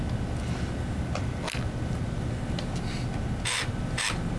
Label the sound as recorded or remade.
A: recorded